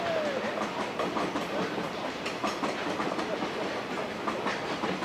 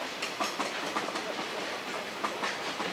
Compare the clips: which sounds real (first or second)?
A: first